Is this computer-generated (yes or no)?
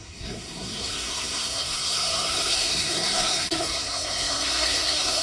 yes